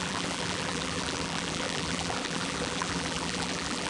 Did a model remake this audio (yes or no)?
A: yes